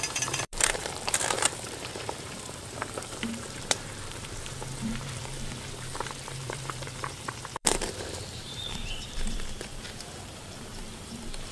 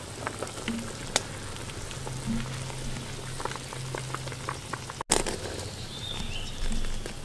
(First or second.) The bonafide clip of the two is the second